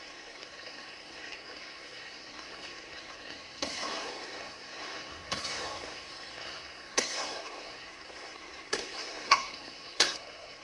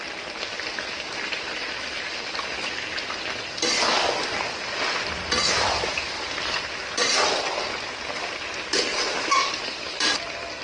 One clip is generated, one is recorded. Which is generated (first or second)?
first